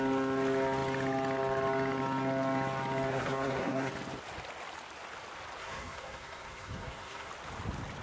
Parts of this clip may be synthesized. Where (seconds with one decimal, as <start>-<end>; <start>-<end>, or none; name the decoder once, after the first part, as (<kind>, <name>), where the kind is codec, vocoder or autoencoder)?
3.1-3.9 (codec, SNAC); 5.6-7.3

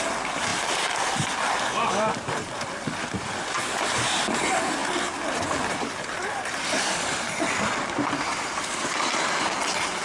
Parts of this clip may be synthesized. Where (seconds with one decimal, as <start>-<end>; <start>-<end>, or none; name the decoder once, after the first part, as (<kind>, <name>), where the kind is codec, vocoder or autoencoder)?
none

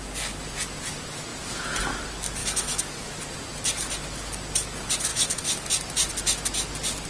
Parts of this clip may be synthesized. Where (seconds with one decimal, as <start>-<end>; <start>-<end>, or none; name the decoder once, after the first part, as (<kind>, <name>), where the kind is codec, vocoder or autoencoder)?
2.4-3.2 (autoencoder, DAC-VAE); 5.1-5.7

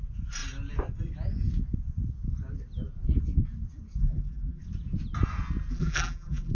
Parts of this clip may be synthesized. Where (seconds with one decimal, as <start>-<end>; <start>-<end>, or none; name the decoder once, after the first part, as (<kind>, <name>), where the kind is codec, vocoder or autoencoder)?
4.0-4.6 (vocoder, BigVGAN v2); 5.7-6.5

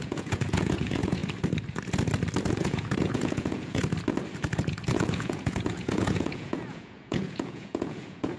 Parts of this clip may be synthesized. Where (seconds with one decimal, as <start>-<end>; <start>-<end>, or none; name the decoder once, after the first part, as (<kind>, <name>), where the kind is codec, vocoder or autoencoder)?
0.0-1.2 (vocoder, Vocos); 2.5-3.8; 4.9-8.4

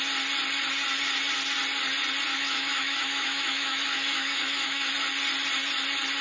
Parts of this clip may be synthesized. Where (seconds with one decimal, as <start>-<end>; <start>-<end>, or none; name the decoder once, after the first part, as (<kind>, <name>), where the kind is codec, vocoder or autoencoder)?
2.3-4.9 (autoencoder, DAC-VAE)

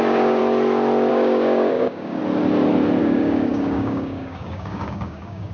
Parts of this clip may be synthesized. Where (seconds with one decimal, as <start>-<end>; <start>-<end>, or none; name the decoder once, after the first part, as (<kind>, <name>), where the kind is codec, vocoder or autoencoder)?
0.0-0.4 (codec, DAC); 1.1-2.2; 3.0-5.5